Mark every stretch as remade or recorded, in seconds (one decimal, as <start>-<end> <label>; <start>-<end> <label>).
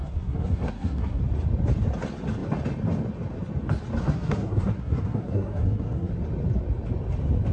0.0-1.2 remade; 1.2-4.0 recorded; 4.0-6.1 remade; 6.1-7.5 recorded